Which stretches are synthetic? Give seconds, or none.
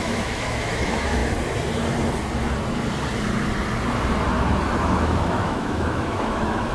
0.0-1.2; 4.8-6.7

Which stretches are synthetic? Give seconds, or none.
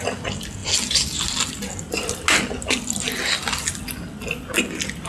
none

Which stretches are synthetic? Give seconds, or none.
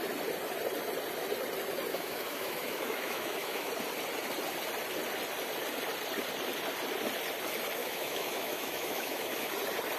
1.9-3.7; 7.8-9.5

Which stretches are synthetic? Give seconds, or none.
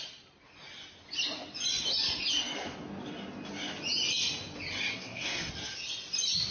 4.9-5.5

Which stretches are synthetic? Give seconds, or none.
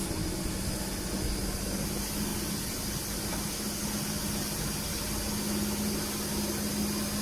2.3-3.5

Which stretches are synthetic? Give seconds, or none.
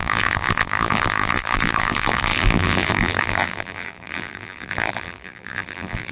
0.0-6.1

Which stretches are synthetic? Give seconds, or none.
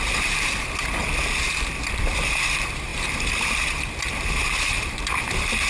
0.0-1.0; 2.1-5.7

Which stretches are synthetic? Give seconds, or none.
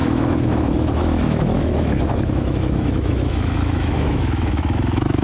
0.0-5.2